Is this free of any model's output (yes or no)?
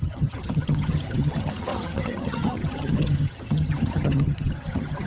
no